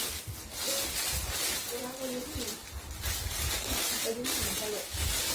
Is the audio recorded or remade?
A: recorded